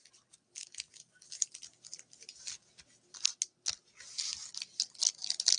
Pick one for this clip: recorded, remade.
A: recorded